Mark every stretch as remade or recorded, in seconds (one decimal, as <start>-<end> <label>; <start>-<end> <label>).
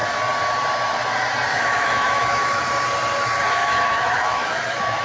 0.0-1.5 recorded; 1.5-2.6 remade; 2.6-3.6 recorded; 3.6-5.0 remade